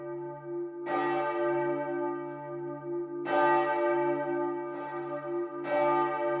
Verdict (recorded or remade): recorded